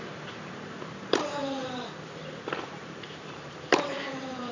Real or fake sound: fake